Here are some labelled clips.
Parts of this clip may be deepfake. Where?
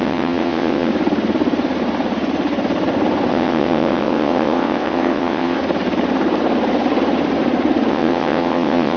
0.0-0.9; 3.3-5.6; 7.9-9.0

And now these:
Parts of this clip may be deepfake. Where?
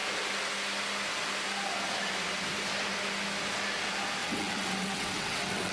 4.2-5.7